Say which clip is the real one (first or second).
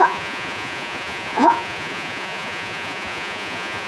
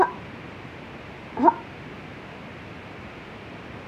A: second